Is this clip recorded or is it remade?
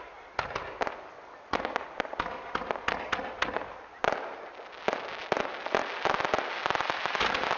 recorded